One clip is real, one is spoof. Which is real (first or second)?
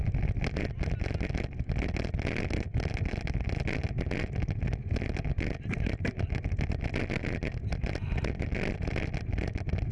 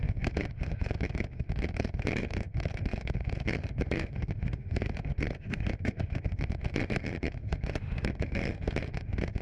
first